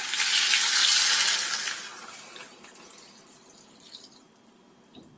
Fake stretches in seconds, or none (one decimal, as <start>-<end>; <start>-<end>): 0.8-3.9

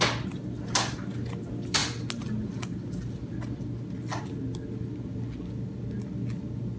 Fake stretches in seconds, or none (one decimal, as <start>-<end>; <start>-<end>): none

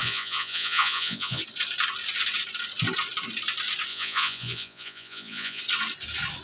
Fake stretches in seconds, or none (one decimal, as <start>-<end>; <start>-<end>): 0.0-1.4; 3.9-5.6

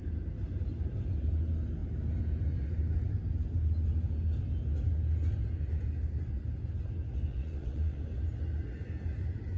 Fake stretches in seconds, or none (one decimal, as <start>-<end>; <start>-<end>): 7.3-8.0

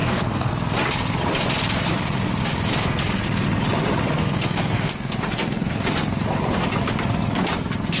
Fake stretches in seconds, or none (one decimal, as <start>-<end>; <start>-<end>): 0.0-0.5; 2.7-3.2; 4.2-4.9

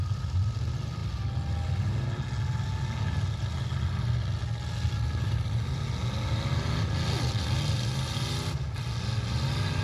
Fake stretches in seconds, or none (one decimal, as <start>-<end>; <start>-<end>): none